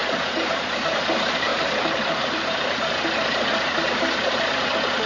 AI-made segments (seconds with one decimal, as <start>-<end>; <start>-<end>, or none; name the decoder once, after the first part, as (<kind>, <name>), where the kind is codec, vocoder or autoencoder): 0.0-0.8 (vocoder, BigVGAN v2); 1.5-2.9